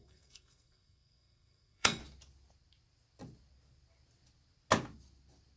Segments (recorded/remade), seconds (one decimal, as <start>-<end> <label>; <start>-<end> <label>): 0.0-2.0 remade; 2.0-5.6 recorded